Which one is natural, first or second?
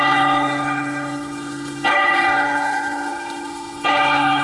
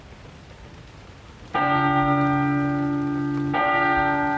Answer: second